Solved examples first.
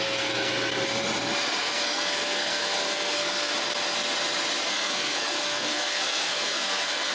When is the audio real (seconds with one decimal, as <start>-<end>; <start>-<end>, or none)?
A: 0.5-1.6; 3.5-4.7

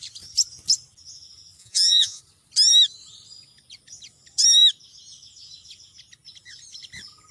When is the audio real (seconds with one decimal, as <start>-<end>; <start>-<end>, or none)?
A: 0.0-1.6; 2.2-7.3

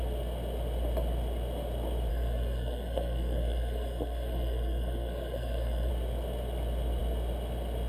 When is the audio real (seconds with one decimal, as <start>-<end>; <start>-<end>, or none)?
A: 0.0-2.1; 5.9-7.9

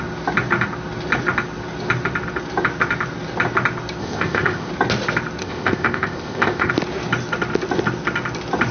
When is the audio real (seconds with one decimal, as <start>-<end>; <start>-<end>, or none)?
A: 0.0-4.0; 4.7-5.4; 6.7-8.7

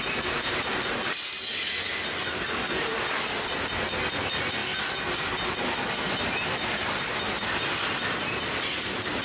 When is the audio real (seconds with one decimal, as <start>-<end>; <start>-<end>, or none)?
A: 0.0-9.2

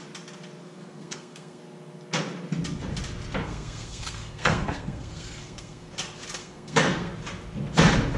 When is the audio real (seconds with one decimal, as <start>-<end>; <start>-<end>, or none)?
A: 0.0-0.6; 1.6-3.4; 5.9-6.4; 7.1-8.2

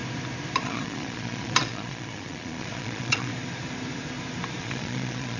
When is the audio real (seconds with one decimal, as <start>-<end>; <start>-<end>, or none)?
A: 0.0-0.6; 3.3-4.6